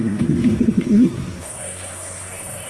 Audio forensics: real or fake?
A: fake